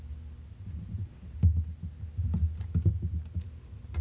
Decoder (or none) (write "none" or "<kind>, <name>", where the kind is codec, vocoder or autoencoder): none